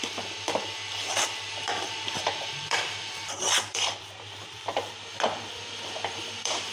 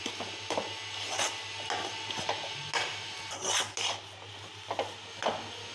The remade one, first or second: first